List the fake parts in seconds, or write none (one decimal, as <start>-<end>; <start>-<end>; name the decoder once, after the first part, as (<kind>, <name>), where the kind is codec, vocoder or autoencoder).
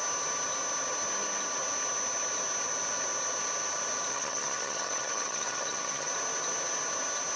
4.1-6.1 (vocoder, HiFi-GAN)